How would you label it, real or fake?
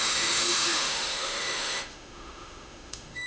fake